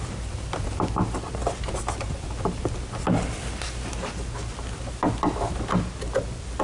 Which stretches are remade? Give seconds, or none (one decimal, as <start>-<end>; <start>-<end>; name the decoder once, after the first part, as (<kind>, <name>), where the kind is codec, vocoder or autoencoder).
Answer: none